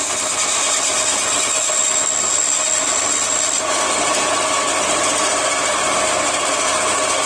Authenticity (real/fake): real